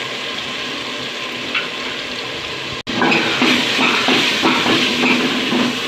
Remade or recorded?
recorded